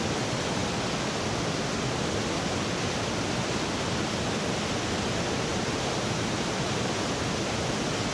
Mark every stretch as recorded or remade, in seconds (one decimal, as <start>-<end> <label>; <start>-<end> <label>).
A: 0.0-8.1 recorded